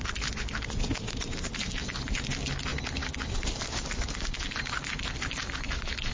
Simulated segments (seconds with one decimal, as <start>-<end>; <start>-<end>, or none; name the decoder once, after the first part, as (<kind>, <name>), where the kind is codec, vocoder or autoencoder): none